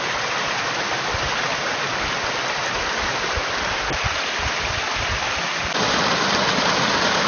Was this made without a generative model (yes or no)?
yes